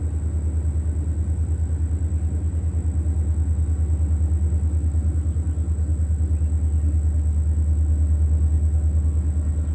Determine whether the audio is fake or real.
real